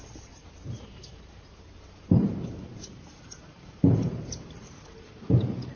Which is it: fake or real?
fake